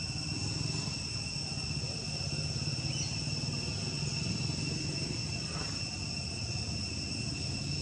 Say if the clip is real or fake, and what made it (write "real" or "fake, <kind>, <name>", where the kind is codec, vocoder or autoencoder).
real